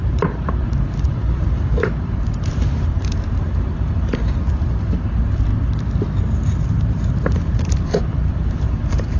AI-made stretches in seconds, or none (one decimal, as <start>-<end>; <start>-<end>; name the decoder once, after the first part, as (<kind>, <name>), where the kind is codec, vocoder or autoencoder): 0.0-5.5 (vocoder, BigVGAN v2); 6.2-9.2